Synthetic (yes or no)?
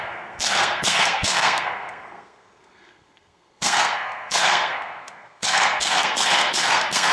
yes